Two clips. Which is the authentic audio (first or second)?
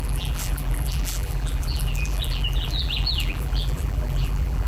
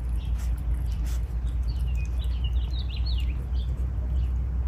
second